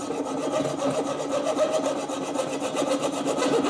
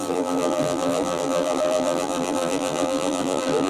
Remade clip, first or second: second